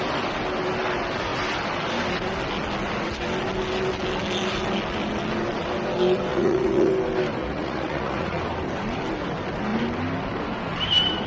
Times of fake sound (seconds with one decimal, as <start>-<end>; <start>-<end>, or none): 6.3-6.9; 7.4-8.4